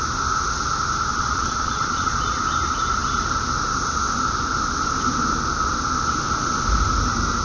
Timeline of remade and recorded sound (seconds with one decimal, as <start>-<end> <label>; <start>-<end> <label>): 0.0-1.1 recorded; 1.1-2.4 remade; 2.4-7.4 recorded